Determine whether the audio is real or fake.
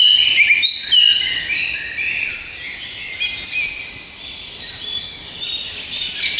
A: real